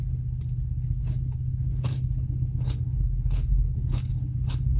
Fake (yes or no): yes